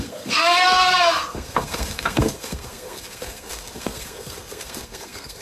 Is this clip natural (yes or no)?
no